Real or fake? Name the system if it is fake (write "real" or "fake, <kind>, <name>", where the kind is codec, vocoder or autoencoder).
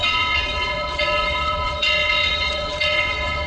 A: fake, vocoder, WaveNeXt